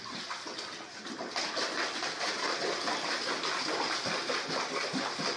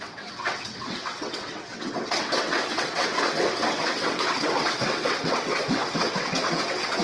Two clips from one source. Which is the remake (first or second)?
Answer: second